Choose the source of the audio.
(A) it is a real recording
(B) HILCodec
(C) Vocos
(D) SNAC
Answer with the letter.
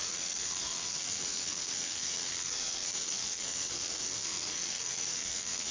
D